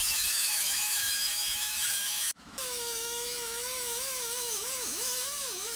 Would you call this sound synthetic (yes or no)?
yes